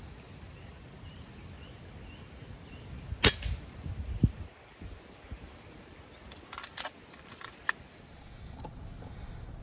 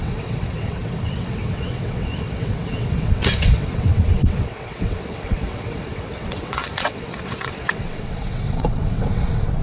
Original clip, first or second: first